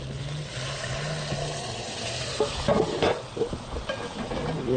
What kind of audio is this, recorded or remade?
recorded